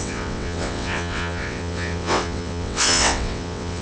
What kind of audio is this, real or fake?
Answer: fake